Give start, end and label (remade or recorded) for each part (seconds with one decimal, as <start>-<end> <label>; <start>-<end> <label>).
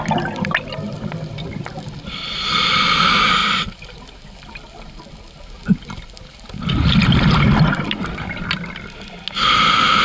0.0-10.0 recorded